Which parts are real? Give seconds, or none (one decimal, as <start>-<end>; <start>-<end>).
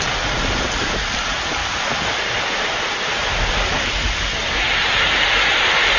1.6-2.4; 2.9-4.4